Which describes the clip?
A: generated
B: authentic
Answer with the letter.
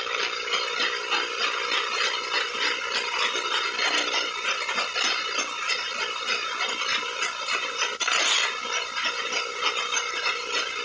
B